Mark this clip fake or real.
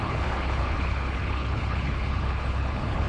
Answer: fake